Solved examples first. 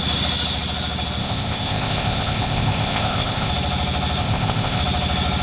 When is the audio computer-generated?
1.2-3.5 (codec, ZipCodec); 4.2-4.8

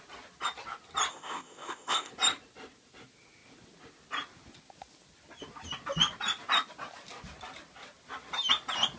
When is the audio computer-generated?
1.1-2.1 (codec, ZipCodec)

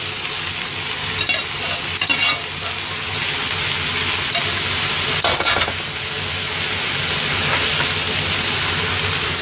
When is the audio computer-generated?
none

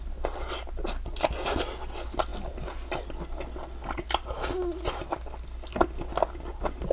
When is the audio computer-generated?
none

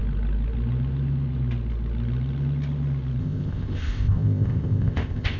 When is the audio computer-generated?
3.2-5.4 (codec, ZipCodec)

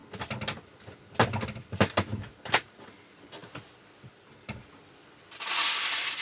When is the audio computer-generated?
none

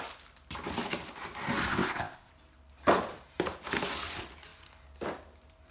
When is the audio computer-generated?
1.7-2.3 (codec, ZipCodec)

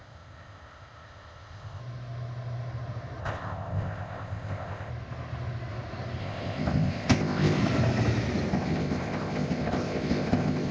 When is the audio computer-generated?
0.0-1.8 (codec, ZipCodec); 3.2-4.9; 6.2-7.6; 8.5-10.7